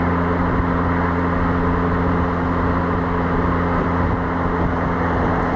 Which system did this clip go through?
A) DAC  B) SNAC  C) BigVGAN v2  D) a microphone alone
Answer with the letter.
D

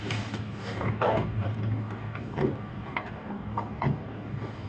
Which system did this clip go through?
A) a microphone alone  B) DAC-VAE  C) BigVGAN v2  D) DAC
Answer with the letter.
D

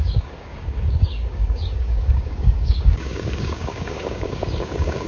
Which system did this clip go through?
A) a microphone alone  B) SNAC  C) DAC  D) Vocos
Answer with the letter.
C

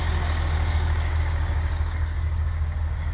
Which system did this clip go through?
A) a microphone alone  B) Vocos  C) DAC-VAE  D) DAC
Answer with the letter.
D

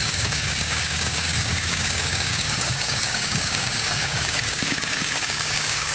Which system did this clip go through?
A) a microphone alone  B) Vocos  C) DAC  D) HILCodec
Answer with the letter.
C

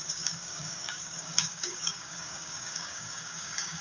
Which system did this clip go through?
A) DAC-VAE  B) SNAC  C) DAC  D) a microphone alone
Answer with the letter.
C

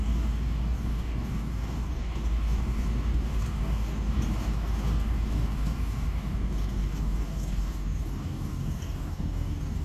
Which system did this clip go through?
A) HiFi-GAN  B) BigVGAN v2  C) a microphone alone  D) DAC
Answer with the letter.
D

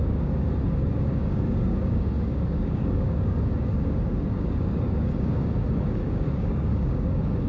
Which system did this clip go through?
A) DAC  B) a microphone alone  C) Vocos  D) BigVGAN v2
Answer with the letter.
A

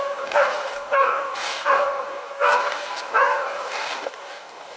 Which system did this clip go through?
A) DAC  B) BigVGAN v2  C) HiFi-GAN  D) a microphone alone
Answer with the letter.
A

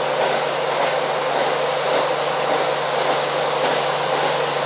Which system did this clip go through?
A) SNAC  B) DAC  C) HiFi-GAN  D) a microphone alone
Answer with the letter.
D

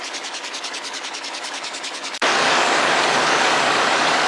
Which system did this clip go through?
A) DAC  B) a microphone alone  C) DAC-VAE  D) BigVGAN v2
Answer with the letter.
A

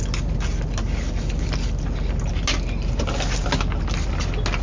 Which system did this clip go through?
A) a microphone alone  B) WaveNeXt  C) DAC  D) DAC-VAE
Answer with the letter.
A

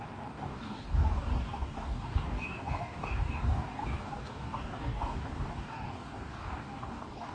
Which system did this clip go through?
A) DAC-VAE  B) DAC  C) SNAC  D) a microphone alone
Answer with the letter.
B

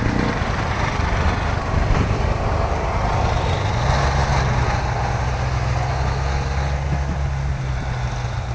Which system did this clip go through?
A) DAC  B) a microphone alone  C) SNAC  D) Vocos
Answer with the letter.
B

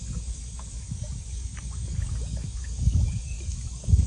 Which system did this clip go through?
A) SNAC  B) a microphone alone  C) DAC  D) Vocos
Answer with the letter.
C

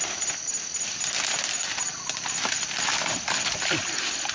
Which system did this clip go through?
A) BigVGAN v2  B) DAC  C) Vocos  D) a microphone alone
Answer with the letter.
D